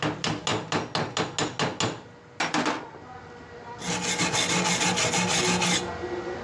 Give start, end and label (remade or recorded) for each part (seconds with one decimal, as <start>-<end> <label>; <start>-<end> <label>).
0.0-6.4 recorded

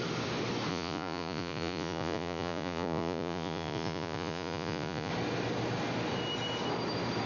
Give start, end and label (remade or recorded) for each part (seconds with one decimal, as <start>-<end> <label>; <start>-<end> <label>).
0.0-0.7 recorded; 0.7-5.1 remade; 5.1-7.3 recorded

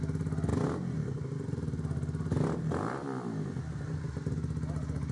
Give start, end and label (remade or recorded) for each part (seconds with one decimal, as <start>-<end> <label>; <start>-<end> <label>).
0.0-5.1 recorded

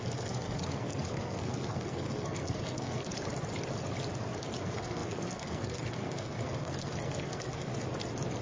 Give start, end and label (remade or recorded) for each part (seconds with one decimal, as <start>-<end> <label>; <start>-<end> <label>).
0.0-3.1 remade; 3.1-4.6 recorded; 4.6-7.7 remade; 7.7-8.4 recorded

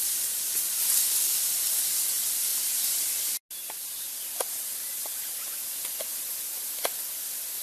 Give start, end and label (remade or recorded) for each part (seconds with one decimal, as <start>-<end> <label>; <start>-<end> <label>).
0.0-7.6 recorded

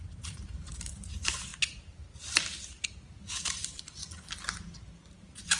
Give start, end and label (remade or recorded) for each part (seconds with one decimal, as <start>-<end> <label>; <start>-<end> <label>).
0.0-1.5 remade; 1.5-3.3 recorded; 3.3-4.0 remade; 4.0-5.1 recorded; 5.1-5.6 remade

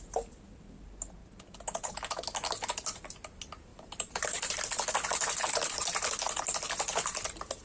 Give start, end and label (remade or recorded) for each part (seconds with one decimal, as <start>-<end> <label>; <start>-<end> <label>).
0.0-3.7 recorded; 3.7-4.6 remade; 4.6-7.6 recorded

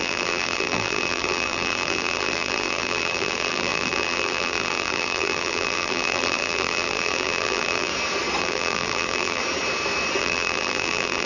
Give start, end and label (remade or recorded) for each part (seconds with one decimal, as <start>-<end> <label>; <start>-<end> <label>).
0.0-7.9 remade; 7.9-8.4 recorded; 8.4-9.4 remade; 9.4-10.2 recorded; 10.2-11.3 remade